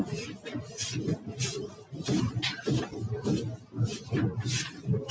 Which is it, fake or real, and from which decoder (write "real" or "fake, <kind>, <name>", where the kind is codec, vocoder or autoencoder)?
real